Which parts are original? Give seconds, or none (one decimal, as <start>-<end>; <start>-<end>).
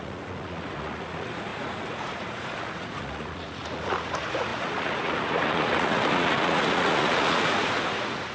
none